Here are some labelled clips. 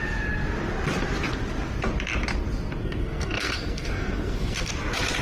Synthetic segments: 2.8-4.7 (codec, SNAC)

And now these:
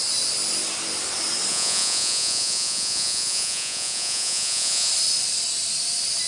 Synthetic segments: 1.5-4.9 (vocoder, Vocos)

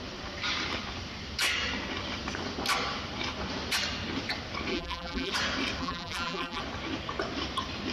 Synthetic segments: 4.7-5.3 (vocoder, BigVGAN v2); 5.8-6.6